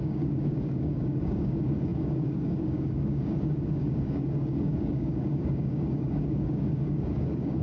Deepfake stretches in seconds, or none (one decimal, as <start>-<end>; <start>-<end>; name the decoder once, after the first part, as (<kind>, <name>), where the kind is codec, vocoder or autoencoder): 0.0-7.6 (codec, DAC)